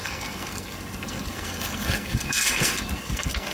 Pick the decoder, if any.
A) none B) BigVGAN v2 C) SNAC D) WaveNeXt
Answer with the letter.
C